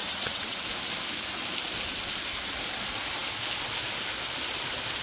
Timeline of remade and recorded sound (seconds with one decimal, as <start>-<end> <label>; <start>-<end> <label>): 0.0-0.6 remade; 0.6-5.0 recorded